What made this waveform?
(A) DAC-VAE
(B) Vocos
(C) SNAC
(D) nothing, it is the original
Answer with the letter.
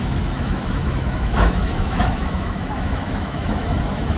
A